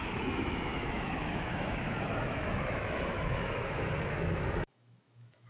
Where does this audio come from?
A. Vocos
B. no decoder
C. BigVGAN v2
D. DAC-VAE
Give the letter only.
D